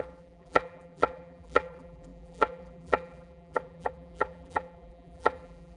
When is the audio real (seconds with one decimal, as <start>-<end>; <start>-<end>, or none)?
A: none